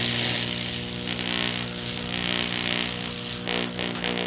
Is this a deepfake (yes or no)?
no